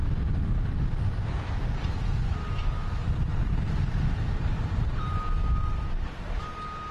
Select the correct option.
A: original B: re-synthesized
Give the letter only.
A